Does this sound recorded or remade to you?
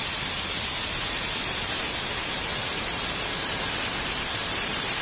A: remade